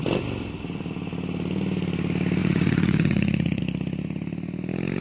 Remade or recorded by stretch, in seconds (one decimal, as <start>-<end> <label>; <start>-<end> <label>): 0.0-2.4 recorded; 2.4-3.6 remade; 3.6-5.0 recorded